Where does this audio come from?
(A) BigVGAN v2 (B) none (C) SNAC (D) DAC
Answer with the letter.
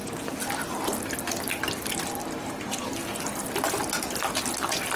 B